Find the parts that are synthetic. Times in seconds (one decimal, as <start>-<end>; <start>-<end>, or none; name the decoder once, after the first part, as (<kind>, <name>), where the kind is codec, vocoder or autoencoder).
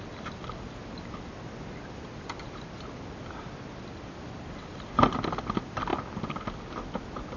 none